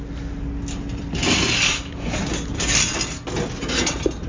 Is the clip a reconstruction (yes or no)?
no